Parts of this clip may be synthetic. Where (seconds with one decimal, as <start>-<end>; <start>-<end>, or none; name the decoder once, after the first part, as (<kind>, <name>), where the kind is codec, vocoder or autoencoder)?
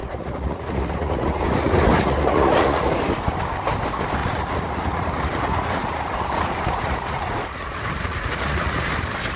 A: 0.0-2.9 (vocoder, Vocos); 4.2-8.9